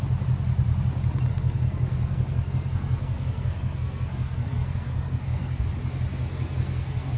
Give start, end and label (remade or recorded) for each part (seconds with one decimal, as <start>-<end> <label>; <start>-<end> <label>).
0.0-1.3 recorded; 1.3-5.6 remade; 5.6-6.2 recorded; 6.2-7.2 remade